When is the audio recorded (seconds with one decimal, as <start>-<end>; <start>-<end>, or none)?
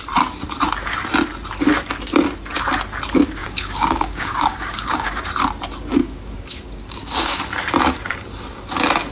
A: 0.0-3.4; 5.2-6.0; 7.4-9.1